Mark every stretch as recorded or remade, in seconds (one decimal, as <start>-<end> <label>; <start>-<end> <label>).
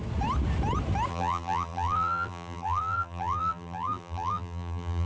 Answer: 0.0-1.1 recorded; 1.1-5.1 remade